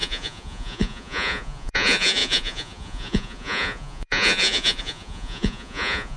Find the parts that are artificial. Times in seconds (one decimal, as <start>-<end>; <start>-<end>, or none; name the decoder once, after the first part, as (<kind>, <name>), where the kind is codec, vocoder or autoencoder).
0.0-6.2 (vocoder, Vocos)